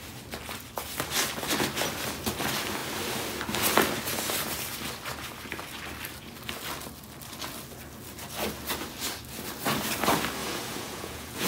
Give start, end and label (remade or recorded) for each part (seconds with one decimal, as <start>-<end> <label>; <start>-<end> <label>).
0.0-10.4 recorded; 10.4-11.5 remade